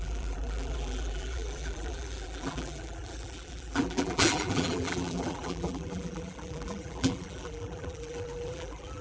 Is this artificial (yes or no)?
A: yes